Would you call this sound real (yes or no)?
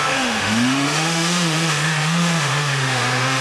no